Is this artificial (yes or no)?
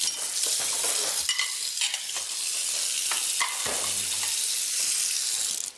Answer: no